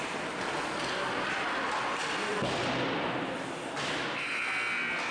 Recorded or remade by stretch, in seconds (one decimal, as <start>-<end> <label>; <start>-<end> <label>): 0.0-5.1 recorded